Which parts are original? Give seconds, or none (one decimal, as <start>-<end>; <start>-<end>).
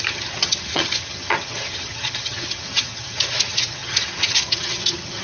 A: none